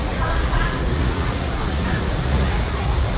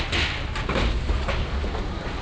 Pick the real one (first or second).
second